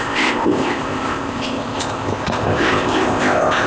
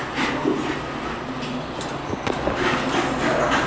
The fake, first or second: first